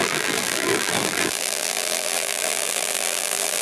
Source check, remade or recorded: remade